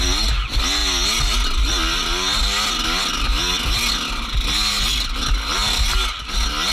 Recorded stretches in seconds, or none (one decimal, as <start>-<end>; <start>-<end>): 0.0-6.7